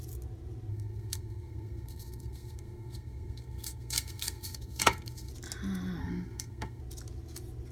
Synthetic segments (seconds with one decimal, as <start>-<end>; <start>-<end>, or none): 0.7-5.3; 6.0-6.8